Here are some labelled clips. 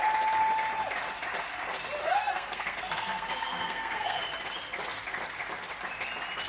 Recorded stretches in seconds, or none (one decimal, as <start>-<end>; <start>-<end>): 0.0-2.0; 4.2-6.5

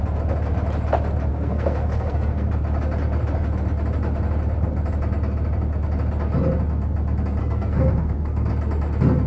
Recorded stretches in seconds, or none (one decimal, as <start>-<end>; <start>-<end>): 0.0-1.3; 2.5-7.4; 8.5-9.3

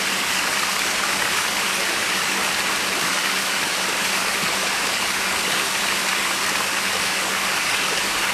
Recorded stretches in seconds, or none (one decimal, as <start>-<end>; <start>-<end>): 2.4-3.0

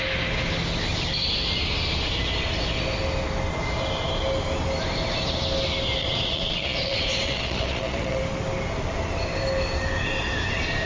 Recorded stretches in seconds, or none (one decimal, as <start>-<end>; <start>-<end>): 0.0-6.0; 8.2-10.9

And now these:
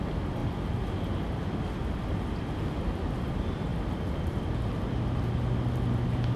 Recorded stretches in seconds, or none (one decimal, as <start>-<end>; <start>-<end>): 0.0-6.4